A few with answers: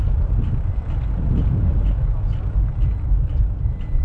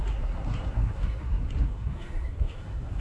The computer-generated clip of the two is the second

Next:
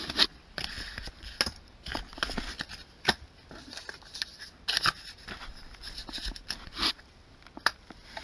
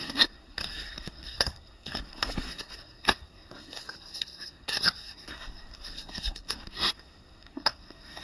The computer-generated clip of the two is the second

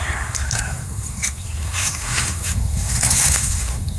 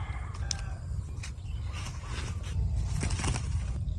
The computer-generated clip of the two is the first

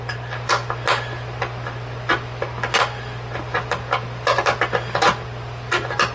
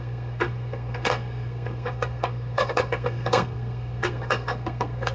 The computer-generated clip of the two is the second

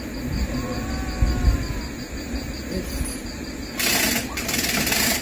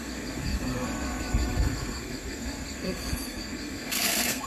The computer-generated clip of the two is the second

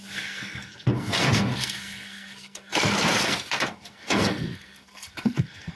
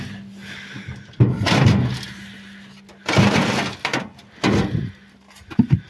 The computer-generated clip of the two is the first